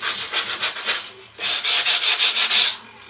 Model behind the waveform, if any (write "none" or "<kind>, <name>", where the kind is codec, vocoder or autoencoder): none